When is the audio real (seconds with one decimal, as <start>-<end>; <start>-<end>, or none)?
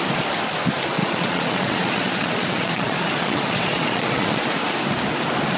0.0-1.0; 4.4-5.6